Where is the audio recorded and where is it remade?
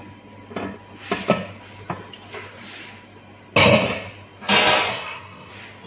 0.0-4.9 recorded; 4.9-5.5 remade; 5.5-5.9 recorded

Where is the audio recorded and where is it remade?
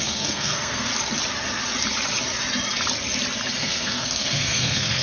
0.0-0.9 remade; 0.9-3.6 recorded; 3.6-5.0 remade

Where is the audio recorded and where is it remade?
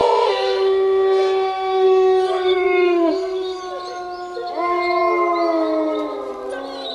0.0-3.6 remade; 3.6-6.9 recorded